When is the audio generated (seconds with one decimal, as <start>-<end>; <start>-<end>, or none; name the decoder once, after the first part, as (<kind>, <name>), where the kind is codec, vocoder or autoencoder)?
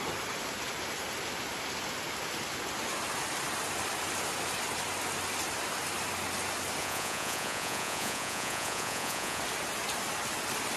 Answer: 6.8-9.4 (vocoder, Vocos)